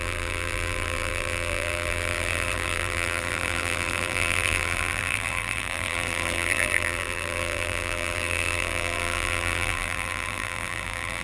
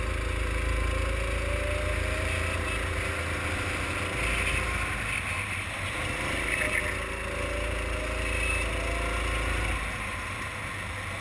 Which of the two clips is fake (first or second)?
first